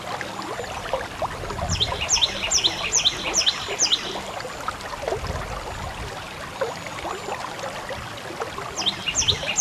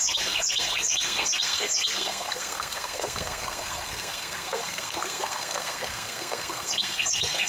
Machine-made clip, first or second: second